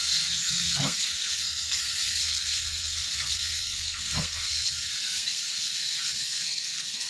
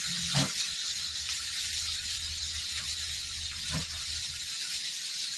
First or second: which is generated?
first